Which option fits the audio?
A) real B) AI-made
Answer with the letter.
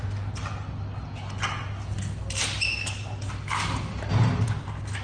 A